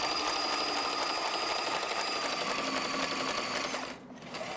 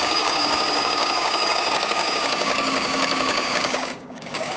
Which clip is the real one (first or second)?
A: first